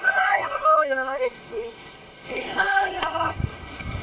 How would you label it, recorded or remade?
remade